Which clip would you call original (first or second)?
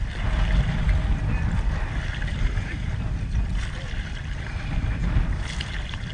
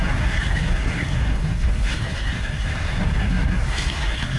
first